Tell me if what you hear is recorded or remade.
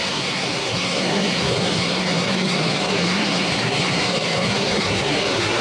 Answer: remade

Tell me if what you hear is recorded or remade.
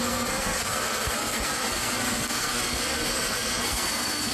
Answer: remade